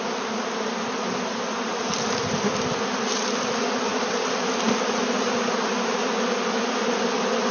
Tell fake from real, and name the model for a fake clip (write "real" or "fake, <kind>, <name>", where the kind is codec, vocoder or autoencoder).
real